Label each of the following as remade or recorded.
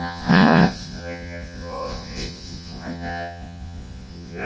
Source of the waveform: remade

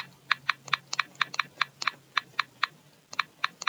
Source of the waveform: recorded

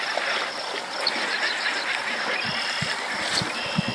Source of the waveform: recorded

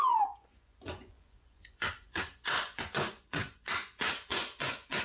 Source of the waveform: remade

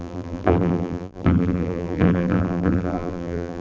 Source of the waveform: remade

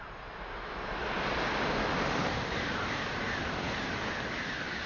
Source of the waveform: recorded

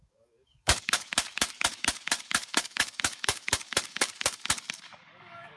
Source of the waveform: remade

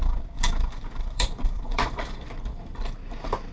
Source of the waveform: remade